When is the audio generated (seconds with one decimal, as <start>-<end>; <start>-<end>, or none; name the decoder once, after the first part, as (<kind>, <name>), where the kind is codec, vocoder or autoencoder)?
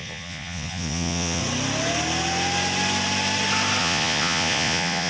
0.0-1.4 (vocoder, Vocos); 3.8-5.1